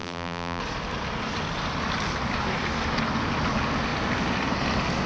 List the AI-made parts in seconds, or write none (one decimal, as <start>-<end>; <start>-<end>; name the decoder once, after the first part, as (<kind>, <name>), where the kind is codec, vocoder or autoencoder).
0.0-0.6 (vocoder, BigVGAN v2)